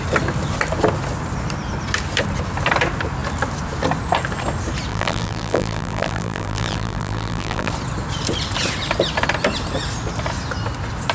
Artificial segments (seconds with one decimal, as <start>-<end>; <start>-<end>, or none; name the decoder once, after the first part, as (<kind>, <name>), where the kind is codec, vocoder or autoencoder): 4.9-7.7 (vocoder, BigVGAN v2)